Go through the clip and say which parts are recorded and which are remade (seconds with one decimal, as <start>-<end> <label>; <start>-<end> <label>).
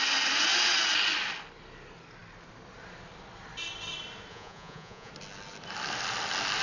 0.0-4.3 recorded; 4.3-5.1 remade; 5.1-6.6 recorded